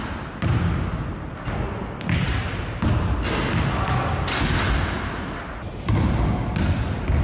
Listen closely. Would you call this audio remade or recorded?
recorded